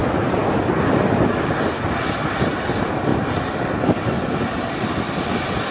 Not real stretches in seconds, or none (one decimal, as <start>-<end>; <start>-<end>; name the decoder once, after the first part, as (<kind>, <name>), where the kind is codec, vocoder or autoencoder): none